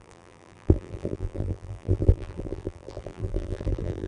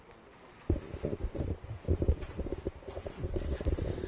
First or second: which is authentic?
second